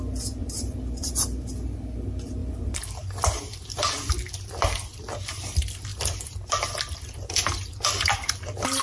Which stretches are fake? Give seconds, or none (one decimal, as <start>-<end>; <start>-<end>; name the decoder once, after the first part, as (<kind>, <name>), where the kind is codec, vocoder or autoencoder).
0.4-1.1 (vocoder, BigVGAN v2); 2.4-4.1; 5.9-8.3